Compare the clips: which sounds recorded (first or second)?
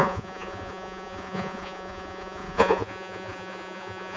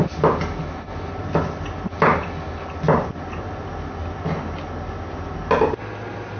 second